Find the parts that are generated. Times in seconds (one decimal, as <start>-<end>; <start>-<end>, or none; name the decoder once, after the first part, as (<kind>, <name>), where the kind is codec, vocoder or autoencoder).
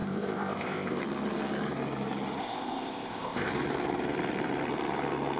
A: 0.0-1.0 (codec, ZipCodec); 2.4-3.5